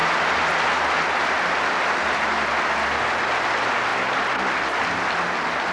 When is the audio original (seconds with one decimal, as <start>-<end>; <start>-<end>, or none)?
0.0-5.7